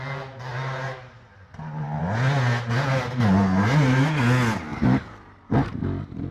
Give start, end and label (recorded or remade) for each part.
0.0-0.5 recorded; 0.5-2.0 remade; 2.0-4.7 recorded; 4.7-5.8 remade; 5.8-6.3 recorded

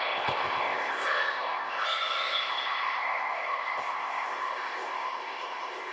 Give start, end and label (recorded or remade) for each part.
0.0-5.9 remade

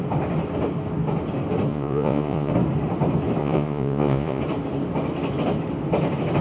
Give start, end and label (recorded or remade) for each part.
0.0-1.7 recorded; 1.7-2.5 remade; 2.5-3.4 recorded; 3.4-4.4 remade; 4.4-6.4 recorded

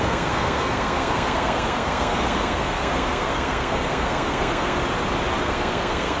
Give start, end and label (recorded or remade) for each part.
0.0-4.8 remade; 4.8-5.4 recorded; 5.4-6.2 remade